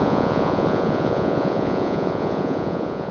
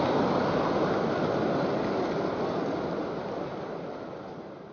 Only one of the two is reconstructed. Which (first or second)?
first